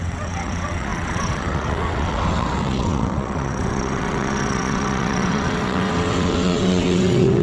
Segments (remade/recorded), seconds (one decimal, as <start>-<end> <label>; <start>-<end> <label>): 0.0-7.4 remade